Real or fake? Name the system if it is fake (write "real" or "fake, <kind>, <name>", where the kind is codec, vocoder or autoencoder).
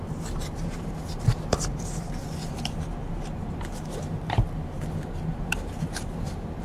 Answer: fake, vocoder, BigVGAN v2